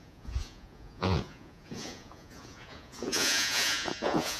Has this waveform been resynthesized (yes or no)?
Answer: yes